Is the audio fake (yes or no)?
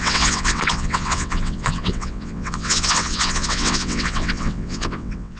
yes